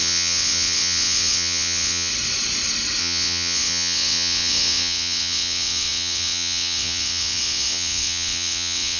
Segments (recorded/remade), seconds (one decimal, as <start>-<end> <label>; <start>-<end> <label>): 0.0-2.1 remade; 2.1-3.0 recorded; 3.0-9.0 remade